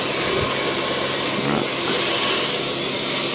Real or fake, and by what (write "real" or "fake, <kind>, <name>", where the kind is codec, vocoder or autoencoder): real